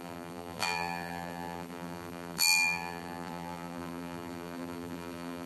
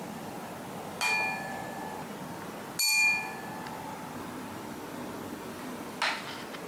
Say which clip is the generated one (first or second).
first